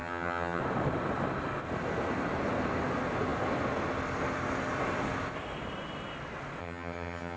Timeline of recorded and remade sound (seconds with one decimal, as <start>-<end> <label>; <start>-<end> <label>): 0.0-0.6 remade; 0.6-6.6 recorded; 6.6-7.4 remade